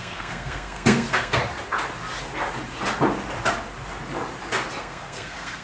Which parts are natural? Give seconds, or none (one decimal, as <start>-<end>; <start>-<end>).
1.4-4.8